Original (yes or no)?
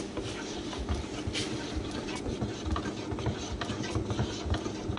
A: yes